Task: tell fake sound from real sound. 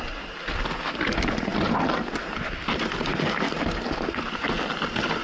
real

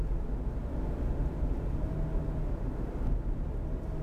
real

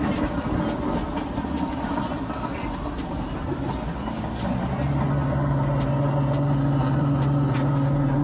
real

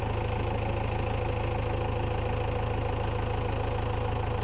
real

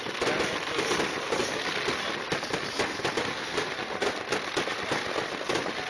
real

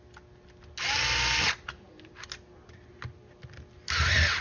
real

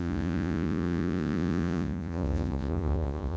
fake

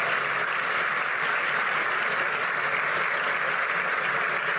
real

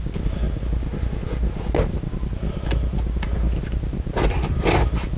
real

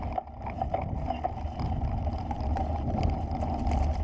real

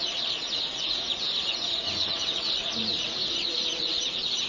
fake